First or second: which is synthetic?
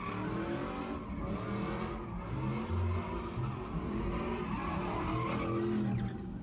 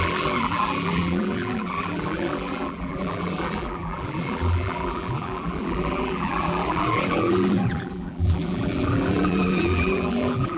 second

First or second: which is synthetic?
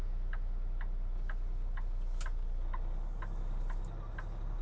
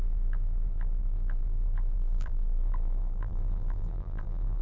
second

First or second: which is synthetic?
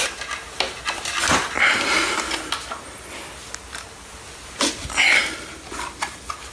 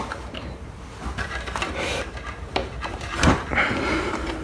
second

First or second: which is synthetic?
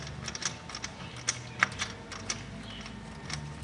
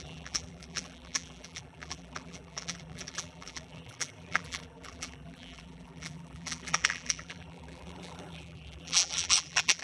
second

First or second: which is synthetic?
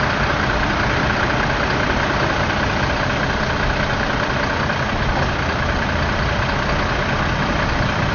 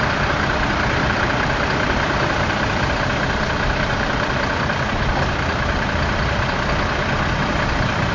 second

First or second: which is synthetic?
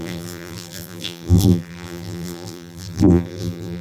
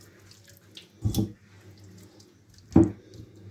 first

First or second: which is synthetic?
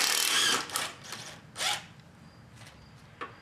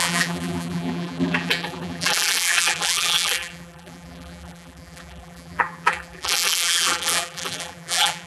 second